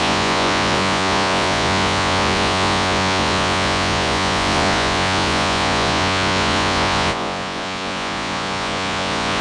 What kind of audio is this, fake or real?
fake